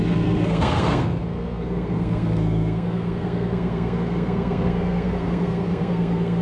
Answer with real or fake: fake